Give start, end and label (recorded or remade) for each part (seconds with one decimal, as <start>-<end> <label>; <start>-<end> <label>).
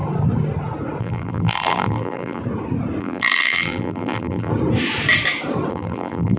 0.0-1.0 recorded; 1.0-2.4 remade; 2.4-3.0 recorded; 3.0-4.5 remade; 4.5-5.7 recorded; 5.7-6.4 remade